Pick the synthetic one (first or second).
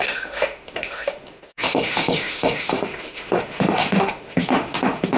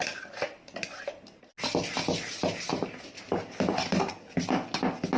first